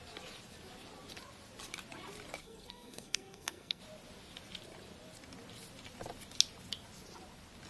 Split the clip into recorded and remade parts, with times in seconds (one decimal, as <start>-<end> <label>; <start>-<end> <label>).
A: 0.0-2.4 recorded; 2.4-3.8 remade; 3.8-7.7 recorded